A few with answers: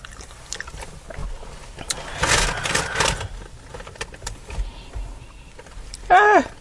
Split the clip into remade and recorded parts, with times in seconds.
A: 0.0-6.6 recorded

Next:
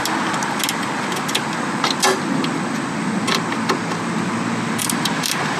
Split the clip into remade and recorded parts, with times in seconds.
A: 0.0-4.8 recorded; 4.8-5.6 remade

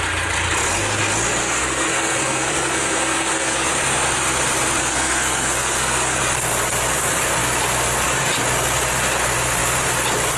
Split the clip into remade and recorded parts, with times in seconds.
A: 0.0-1.4 recorded; 1.4-3.7 remade; 3.7-4.8 recorded; 4.8-6.2 remade; 6.2-10.4 recorded